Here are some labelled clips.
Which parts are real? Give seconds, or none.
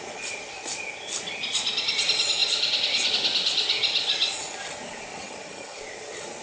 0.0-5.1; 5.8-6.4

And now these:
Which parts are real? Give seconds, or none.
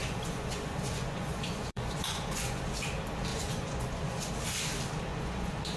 2.6-3.3; 4.3-5.1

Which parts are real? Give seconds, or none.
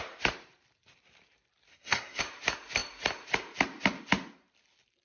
0.0-1.7; 2.2-5.0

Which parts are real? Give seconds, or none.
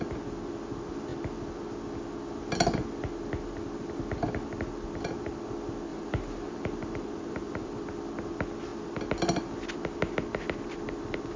0.0-5.9; 7.7-11.4